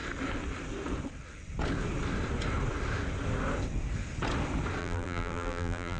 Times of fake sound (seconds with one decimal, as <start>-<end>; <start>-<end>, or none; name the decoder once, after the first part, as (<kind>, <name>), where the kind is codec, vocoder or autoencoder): 4.8-6.0 (vocoder, BigVGAN v2)